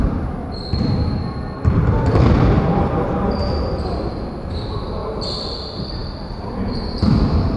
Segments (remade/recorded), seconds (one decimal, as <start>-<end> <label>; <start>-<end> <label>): 0.0-0.4 recorded; 0.4-4.3 remade; 4.3-6.0 recorded; 6.0-7.6 remade